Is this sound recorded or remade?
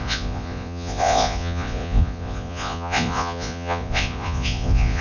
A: remade